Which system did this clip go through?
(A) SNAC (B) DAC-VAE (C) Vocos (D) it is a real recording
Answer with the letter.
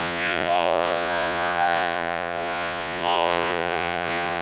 C